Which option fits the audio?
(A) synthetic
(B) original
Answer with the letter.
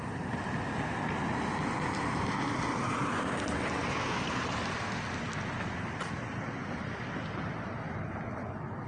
B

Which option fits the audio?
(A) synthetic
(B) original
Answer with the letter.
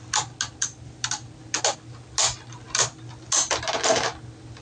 B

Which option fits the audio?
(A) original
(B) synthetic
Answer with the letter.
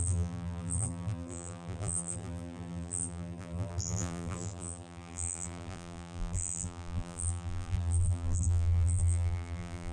B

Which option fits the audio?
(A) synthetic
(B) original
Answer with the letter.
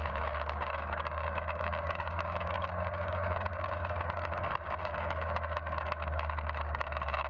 A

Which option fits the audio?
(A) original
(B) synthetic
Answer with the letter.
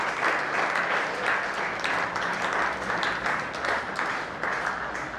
A